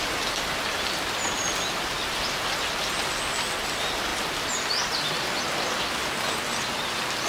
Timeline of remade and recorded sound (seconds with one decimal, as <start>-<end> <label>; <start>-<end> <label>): 0.0-7.3 recorded